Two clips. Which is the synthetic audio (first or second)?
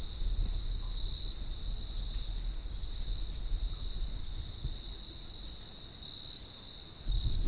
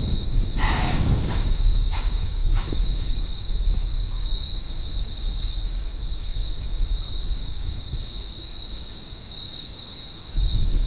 second